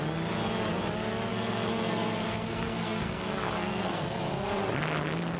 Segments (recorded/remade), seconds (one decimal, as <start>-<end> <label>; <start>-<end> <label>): 0.0-1.3 recorded; 1.3-4.2 remade; 4.2-5.4 recorded